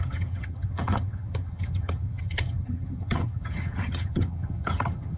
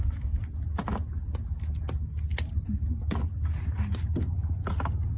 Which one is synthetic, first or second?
first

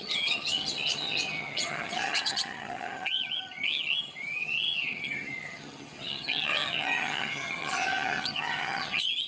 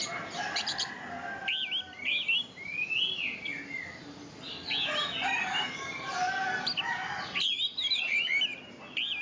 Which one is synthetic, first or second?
first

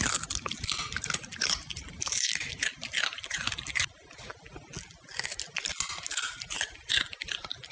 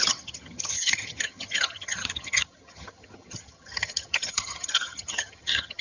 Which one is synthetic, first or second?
second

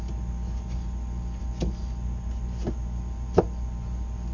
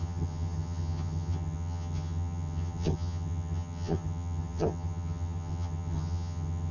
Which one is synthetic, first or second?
second